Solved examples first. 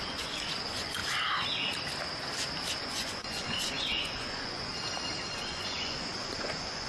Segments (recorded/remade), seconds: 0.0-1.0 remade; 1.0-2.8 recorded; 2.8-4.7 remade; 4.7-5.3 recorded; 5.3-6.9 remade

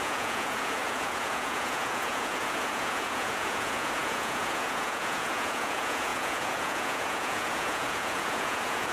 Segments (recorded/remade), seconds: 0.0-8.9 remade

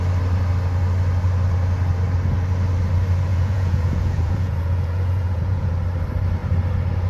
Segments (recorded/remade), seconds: 0.0-3.3 recorded; 3.3-5.7 remade; 5.7-7.1 recorded

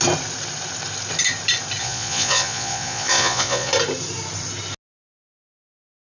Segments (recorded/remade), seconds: 0.0-1.8 recorded; 1.8-3.7 remade; 3.7-6.1 recorded